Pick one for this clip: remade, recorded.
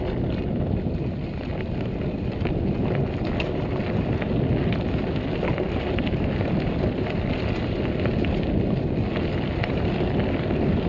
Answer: recorded